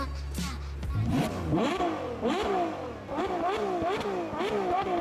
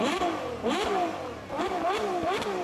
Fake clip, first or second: second